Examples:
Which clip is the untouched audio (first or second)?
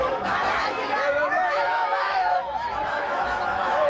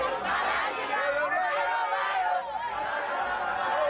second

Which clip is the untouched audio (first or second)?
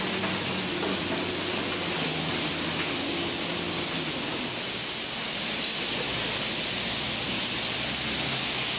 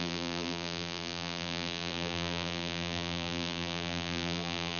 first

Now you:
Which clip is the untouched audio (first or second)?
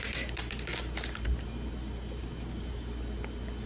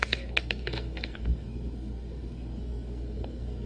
first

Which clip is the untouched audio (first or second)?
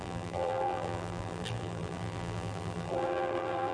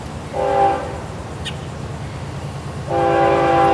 second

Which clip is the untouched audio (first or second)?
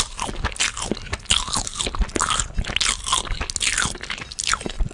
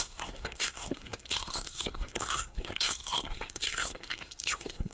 first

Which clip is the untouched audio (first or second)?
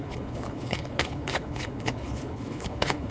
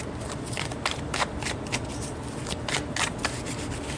second